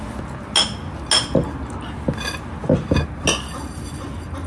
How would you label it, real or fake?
real